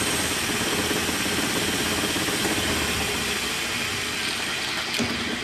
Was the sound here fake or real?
real